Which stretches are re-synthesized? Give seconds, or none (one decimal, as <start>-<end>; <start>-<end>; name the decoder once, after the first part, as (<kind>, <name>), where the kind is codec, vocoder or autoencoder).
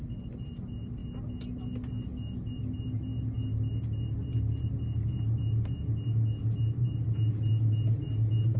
none